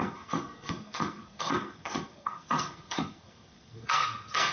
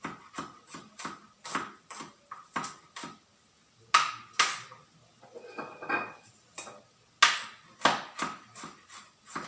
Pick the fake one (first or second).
first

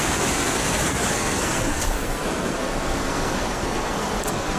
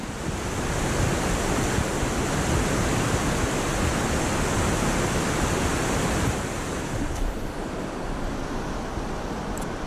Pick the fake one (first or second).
first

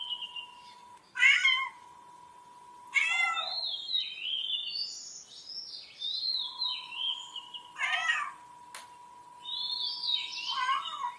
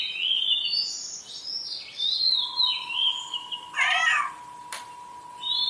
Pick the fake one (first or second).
second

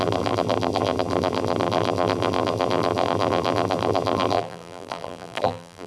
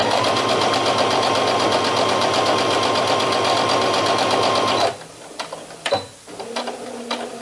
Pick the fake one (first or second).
first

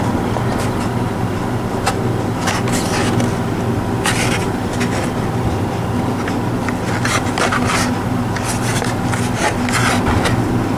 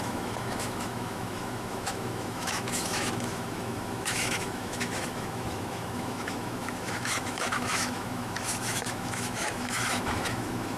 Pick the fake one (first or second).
second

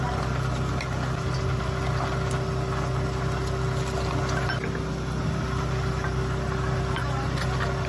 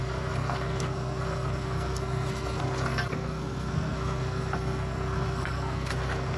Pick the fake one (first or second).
second